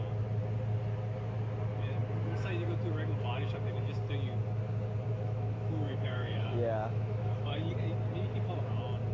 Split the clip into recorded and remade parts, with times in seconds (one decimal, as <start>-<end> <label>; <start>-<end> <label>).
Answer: 0.0-5.1 recorded; 5.1-7.7 remade; 7.7-9.1 recorded